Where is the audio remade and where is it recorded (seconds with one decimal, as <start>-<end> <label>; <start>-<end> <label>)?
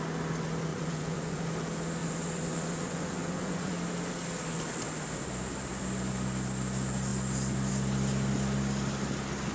0.0-0.7 recorded; 0.7-1.4 remade; 1.4-2.0 recorded; 2.0-3.7 remade; 3.7-9.5 recorded